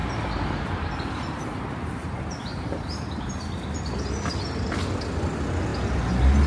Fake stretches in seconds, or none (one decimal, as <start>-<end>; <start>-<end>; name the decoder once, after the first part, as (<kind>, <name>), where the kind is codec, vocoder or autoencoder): 0.0-3.9 (vocoder, BigVGAN v2)